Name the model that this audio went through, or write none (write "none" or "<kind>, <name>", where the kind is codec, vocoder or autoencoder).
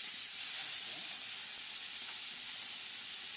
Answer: none